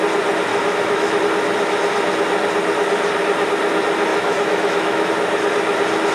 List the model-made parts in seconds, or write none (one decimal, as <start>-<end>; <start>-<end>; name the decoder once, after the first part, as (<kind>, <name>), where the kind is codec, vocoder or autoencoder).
0.5-1.2 (autoencoder, DAC-VAE); 4.1-5.1

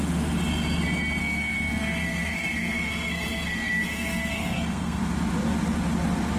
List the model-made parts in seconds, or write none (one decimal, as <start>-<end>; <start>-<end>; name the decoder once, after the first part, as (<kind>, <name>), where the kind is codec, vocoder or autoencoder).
1.2-5.0 (codec, SNAC)

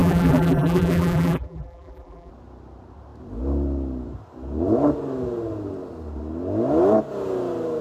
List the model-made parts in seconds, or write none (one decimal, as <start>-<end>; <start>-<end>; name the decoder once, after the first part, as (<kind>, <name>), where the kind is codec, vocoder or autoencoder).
0.0-2.3 (vocoder, BigVGAN v2)

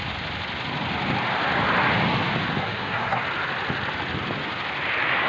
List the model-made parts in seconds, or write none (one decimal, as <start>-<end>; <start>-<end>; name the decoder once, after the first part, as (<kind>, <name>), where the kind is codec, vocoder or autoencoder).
2.6-3.2 (codec, SNAC)